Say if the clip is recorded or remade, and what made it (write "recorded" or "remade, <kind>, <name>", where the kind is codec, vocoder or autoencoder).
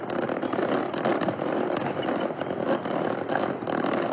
recorded